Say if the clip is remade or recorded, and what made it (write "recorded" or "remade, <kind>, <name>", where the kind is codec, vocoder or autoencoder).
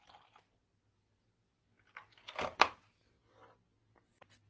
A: recorded